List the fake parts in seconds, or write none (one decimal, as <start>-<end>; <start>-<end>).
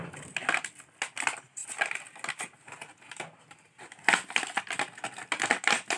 none